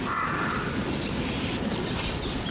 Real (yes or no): yes